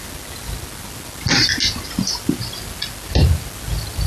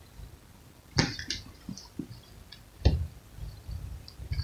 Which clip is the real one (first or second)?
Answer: first